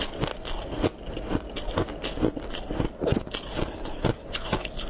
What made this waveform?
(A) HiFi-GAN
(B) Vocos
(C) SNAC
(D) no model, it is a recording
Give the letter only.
D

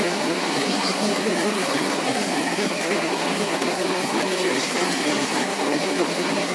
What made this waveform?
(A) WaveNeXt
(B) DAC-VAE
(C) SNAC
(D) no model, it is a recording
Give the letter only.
C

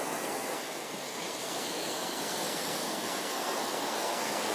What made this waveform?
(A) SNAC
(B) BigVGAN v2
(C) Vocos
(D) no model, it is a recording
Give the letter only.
A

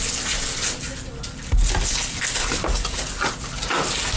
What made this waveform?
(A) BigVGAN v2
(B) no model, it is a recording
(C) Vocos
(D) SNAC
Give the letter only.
B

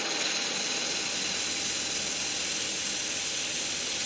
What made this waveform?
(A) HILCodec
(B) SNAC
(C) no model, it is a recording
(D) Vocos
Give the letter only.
C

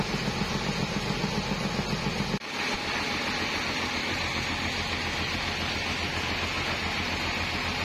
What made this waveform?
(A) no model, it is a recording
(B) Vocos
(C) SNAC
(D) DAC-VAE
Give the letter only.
A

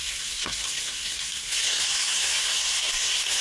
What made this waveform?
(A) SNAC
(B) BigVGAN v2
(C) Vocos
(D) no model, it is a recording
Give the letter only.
A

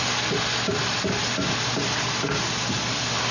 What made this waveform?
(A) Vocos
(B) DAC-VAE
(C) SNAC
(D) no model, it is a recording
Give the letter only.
D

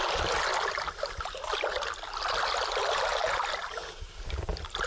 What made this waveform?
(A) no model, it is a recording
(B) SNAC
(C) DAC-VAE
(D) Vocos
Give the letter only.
A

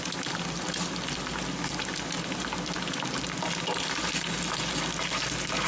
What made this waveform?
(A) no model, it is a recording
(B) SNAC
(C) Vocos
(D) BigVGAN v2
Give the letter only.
A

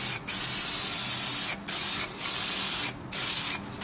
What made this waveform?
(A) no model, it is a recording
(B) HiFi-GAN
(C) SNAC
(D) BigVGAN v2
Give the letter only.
A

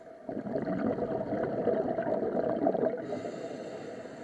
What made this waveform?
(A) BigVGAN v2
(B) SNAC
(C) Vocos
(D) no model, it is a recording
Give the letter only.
D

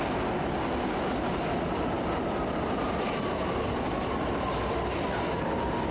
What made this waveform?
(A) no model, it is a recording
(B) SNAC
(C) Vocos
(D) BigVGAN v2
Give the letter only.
A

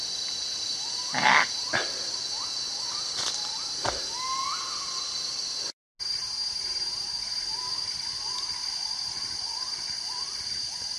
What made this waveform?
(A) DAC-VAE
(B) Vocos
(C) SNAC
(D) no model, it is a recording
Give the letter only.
D